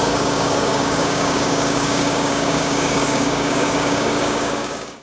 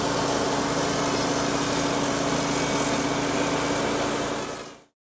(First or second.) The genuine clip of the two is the second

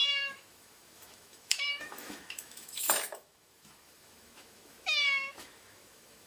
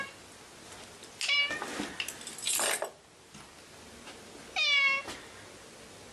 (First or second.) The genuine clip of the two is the second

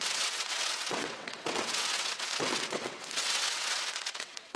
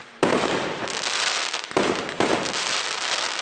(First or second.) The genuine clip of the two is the second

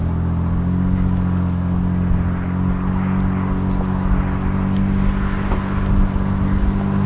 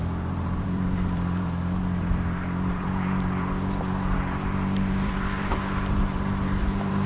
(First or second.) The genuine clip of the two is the first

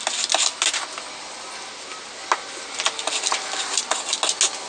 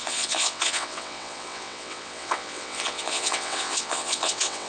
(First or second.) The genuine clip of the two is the first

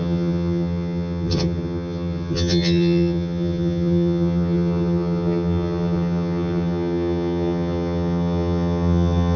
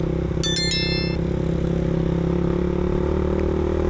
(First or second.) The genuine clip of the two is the second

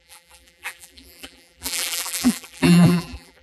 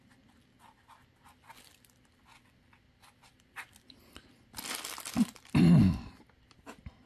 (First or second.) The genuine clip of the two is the second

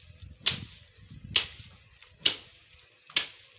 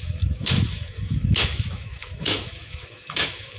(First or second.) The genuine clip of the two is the first